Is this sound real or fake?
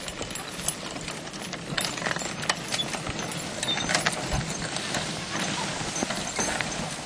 real